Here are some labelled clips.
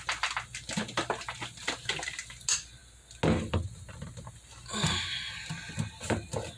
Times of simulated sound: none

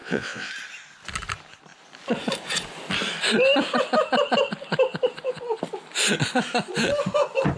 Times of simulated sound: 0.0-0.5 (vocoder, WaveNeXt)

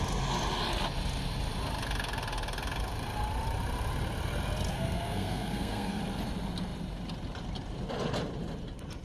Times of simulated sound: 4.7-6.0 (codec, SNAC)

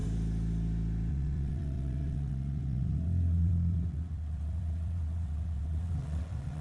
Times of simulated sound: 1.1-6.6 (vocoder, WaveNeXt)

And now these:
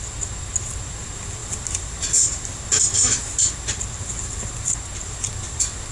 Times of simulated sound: none